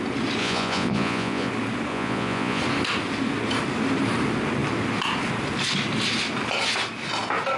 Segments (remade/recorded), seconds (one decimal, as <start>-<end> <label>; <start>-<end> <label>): 0.0-0.4 recorded; 0.4-1.5 remade; 1.5-1.9 recorded; 1.9-2.6 remade; 2.6-7.6 recorded